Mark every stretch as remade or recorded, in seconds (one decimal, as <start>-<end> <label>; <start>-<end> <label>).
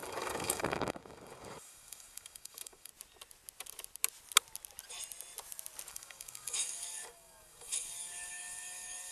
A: 0.0-2.9 remade; 2.9-5.9 recorded; 5.9-9.1 remade